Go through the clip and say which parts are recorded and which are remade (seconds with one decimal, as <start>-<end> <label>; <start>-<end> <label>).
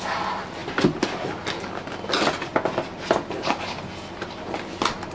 0.0-5.1 recorded